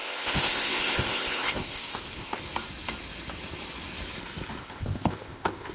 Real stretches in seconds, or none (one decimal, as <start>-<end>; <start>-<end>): 2.4-4.6